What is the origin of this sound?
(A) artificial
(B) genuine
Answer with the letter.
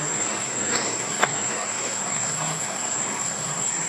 A